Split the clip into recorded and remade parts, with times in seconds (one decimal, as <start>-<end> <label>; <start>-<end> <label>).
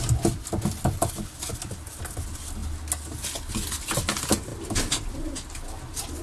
0.0-6.2 recorded